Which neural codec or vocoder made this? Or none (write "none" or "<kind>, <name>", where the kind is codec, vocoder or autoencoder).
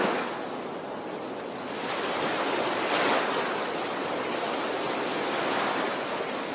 none